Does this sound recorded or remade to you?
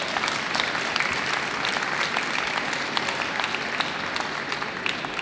recorded